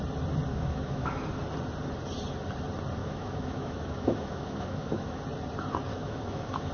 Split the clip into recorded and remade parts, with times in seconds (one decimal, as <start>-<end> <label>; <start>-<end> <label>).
0.0-0.5 recorded; 0.5-1.1 remade; 1.1-3.0 recorded; 3.0-5.2 remade; 5.2-5.9 recorded; 5.9-6.7 remade